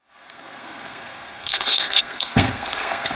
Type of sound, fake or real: fake